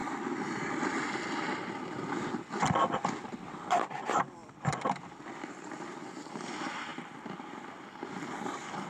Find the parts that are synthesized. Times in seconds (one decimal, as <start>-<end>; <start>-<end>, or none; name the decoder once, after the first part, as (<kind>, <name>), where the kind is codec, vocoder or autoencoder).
4.4-6.5 (vocoder, BigVGAN v2); 6.9-8.9